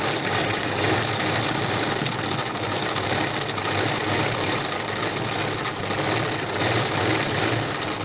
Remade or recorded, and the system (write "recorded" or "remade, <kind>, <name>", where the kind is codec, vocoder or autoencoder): recorded